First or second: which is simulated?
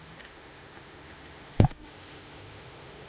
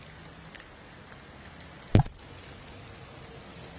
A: first